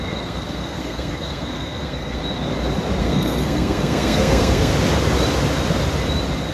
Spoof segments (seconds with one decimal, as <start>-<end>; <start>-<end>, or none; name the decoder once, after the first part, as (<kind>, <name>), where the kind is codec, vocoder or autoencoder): 0.0-2.2 (codec, SNAC); 3.0-4.7